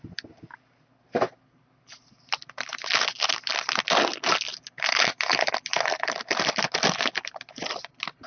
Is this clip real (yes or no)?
yes